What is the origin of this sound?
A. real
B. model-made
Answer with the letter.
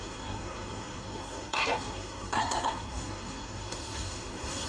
B